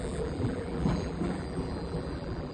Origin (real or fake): fake